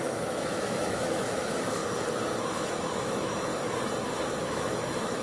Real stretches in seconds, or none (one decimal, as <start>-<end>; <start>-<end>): 1.8-2.4; 3.5-4.5